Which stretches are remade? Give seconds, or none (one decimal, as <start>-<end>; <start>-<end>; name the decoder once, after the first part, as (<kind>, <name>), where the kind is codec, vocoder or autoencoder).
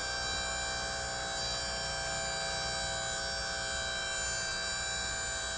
none